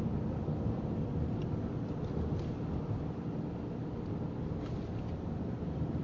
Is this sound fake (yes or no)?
no